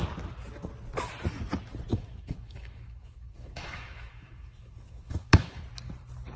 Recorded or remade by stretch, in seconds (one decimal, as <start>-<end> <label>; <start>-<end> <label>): 0.0-1.9 recorded; 1.9-5.6 remade; 5.6-6.4 recorded